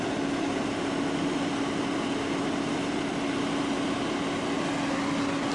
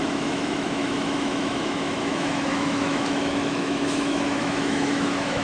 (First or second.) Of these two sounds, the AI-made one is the second